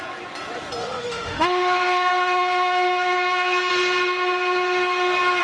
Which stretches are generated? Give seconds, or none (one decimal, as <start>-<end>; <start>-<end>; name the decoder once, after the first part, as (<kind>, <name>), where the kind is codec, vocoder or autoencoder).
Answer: 0.8-3.7 (autoencoder, DAC-VAE)